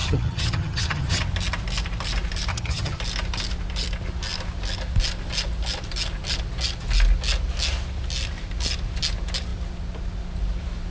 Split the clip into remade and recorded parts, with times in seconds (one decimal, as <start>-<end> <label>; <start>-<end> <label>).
0.0-1.2 remade; 1.2-2.5 recorded; 2.5-3.0 remade; 3.0-10.9 recorded

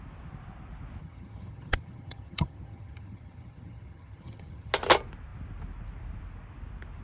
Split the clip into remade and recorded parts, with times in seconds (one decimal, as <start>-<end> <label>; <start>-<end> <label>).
0.0-1.0 recorded; 1.0-4.7 remade; 4.7-7.0 recorded